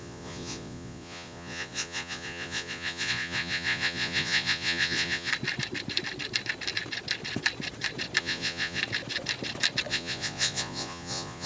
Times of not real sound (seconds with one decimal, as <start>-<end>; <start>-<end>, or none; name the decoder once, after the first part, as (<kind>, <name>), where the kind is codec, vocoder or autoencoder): 0.0-5.3 (vocoder, Vocos); 8.2-8.8; 9.9-11.5